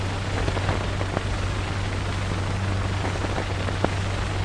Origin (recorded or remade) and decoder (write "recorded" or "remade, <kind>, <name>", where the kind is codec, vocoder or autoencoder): recorded